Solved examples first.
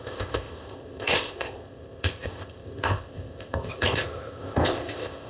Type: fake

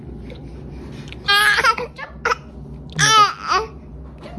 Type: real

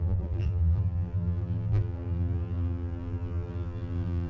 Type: fake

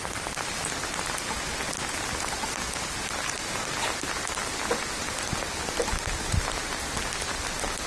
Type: real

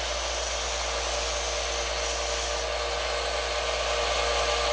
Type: real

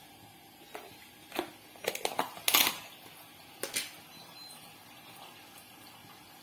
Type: real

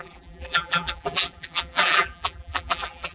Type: fake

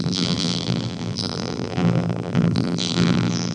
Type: fake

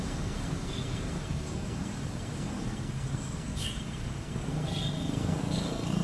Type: fake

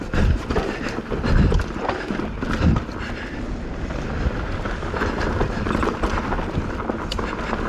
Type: fake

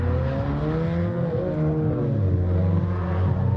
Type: real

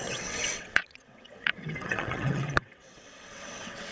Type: fake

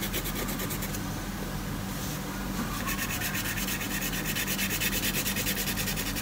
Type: real